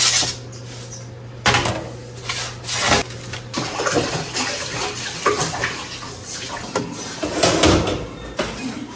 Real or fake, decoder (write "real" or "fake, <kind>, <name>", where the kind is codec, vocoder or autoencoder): real